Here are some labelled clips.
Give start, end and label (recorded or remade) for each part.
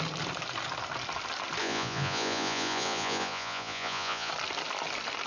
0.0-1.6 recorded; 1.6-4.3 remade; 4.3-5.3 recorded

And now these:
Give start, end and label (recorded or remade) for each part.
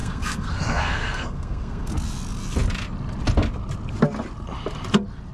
0.0-1.9 remade; 1.9-5.3 recorded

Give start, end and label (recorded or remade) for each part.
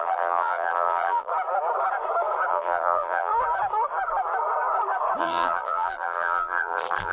0.0-1.3 remade; 1.3-2.5 recorded; 2.5-3.3 remade; 3.3-5.2 recorded; 5.2-7.1 remade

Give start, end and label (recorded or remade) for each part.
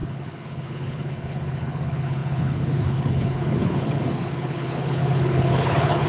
0.0-6.1 remade